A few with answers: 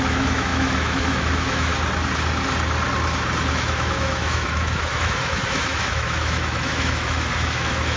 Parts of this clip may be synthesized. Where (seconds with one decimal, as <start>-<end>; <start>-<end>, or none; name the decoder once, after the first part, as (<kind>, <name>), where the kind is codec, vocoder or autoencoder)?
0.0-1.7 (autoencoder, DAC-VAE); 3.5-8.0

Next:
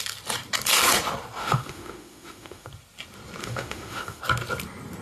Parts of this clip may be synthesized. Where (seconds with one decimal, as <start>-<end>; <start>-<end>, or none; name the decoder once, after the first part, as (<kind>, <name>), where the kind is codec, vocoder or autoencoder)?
1.4-2.7 (autoencoder, DAC-VAE); 3.4-4.2

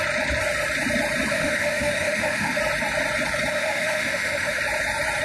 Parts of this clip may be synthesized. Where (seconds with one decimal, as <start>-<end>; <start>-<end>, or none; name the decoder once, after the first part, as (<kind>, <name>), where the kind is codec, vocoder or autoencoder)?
1.3-2.6 (autoencoder, DAC-VAE); 3.5-4.6